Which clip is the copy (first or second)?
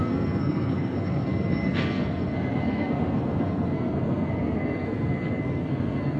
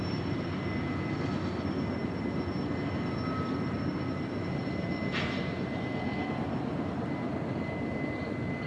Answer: first